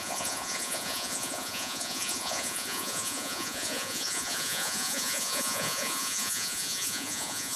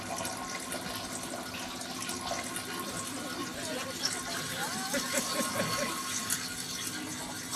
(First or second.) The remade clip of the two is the first